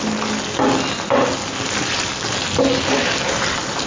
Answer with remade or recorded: recorded